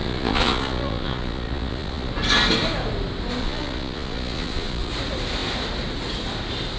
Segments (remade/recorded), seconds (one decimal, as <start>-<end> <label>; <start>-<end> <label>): 0.0-2.1 remade; 2.1-3.4 recorded; 3.4-4.9 remade; 4.9-6.8 recorded

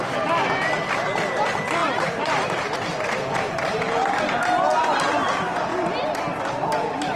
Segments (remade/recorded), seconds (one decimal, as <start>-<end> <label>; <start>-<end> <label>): 0.0-1.8 recorded; 1.8-4.2 remade; 4.2-7.2 recorded

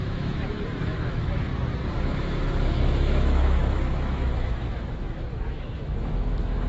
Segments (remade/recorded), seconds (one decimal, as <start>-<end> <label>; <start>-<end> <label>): 0.0-1.5 remade; 1.5-2.0 recorded; 2.0-6.7 remade